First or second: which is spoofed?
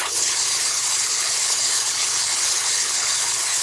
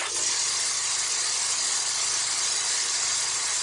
first